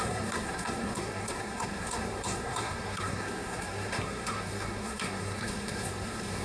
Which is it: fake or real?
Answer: fake